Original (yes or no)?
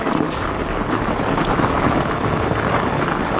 yes